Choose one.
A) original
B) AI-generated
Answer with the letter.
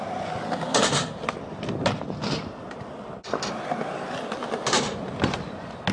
A